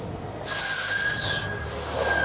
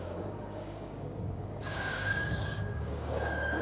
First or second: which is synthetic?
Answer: second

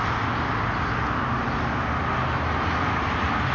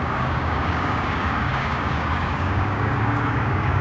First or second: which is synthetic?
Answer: second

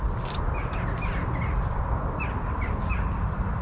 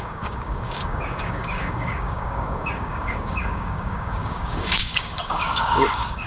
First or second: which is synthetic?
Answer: second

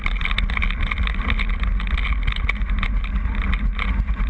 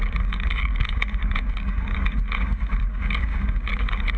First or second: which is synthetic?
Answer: second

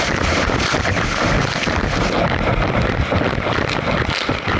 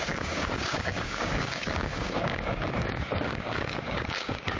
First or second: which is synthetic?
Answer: second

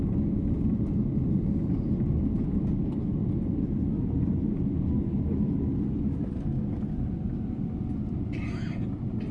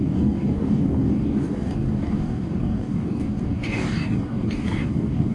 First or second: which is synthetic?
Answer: second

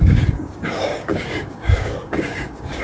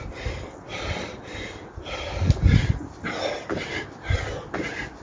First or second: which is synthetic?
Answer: first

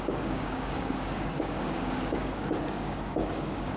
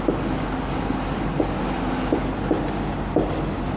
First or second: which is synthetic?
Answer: first